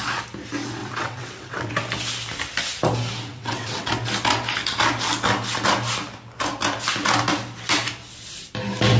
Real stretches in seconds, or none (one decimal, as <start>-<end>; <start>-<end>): 0.0-0.8; 1.7-3.3; 3.9-9.0